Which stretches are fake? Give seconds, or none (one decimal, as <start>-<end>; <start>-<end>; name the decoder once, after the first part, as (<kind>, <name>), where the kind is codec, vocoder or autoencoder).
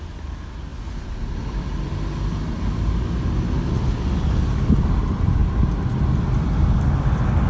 none